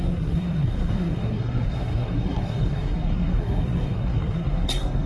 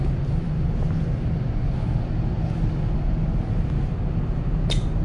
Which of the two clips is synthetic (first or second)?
first